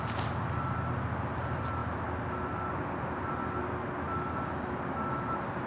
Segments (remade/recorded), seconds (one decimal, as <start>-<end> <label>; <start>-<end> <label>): 0.0-5.7 recorded